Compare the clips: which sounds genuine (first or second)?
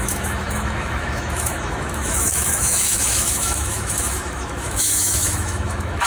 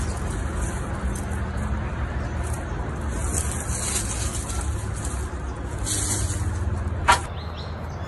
second